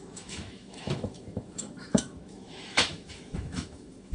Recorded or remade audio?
remade